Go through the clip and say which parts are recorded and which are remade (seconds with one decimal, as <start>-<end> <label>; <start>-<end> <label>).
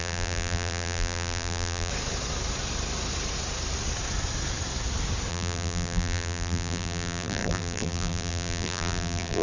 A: 0.0-1.9 remade; 1.9-5.3 recorded; 5.3-9.4 remade